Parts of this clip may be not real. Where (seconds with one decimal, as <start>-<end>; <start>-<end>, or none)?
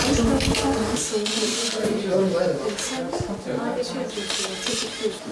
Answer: 1.4-2.0